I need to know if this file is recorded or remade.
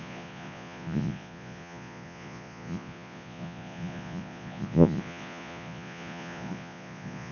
remade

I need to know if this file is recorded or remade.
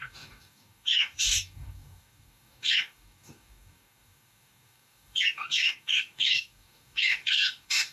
remade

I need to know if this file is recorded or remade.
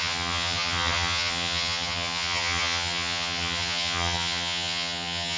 remade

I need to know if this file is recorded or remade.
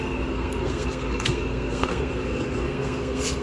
remade